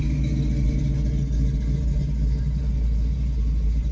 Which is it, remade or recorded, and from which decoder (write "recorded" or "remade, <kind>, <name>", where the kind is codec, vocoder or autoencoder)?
recorded